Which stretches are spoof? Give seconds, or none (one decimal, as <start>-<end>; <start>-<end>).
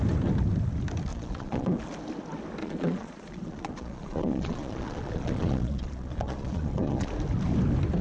1.1-1.8; 2.6-7.1